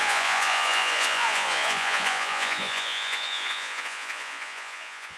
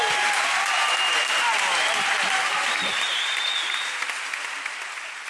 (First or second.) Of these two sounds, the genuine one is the second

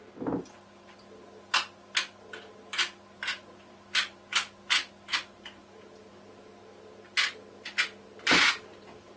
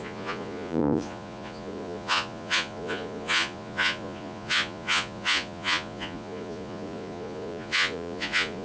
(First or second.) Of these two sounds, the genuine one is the first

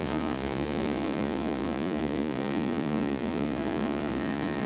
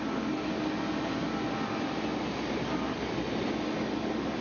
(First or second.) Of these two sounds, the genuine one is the second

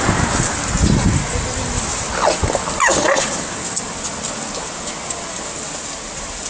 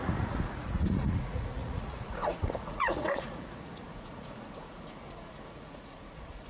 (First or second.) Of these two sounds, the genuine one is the first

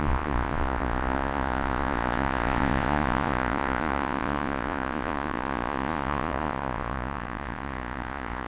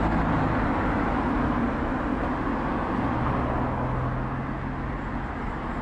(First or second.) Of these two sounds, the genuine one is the second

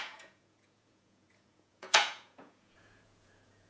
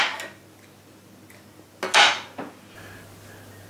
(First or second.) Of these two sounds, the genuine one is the second